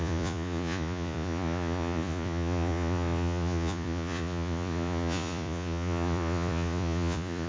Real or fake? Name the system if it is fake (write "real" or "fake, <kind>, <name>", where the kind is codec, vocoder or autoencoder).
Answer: fake, vocoder, Vocos